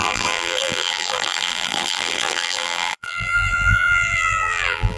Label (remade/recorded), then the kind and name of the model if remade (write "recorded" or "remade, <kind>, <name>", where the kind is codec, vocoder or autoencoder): remade, vocoder, BigVGAN v2